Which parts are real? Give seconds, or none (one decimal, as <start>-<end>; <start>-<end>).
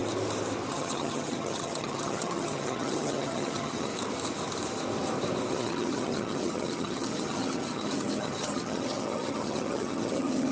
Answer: 0.0-0.7; 3.9-5.5